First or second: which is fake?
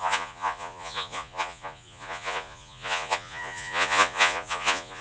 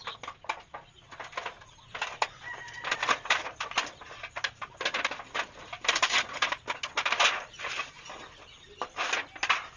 first